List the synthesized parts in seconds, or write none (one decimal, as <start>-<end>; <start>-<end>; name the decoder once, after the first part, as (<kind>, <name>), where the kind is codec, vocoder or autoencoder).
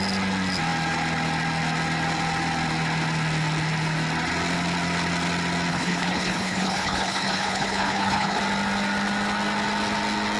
5.7-8.4 (codec, HILCodec)